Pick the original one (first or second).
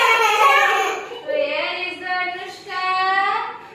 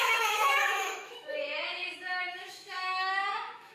first